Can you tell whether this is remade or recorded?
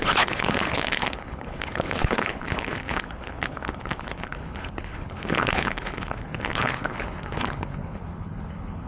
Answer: remade